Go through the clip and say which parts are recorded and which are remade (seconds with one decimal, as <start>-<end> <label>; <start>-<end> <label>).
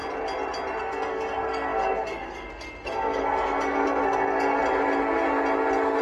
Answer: 0.0-0.8 recorded; 0.8-4.6 remade; 4.6-6.0 recorded